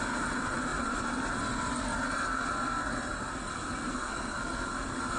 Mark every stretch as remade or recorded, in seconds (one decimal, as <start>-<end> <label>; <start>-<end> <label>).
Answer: 0.0-3.9 recorded; 3.9-4.7 remade; 4.7-5.2 recorded